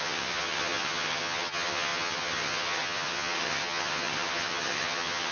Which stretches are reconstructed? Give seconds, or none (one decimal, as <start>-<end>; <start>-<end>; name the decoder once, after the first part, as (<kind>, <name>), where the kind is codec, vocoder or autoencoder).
0.0-5.3 (vocoder, HiFi-GAN)